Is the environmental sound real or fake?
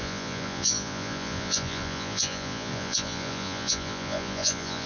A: fake